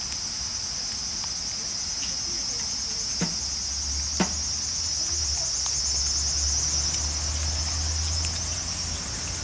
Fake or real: real